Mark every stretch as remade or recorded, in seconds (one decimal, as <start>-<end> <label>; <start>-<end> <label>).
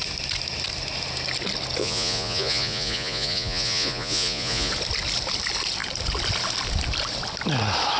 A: 0.0-1.8 recorded; 1.8-4.7 remade; 4.7-8.0 recorded